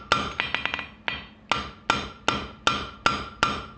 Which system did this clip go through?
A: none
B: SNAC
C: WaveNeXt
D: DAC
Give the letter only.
A